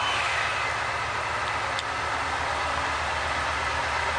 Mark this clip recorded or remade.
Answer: recorded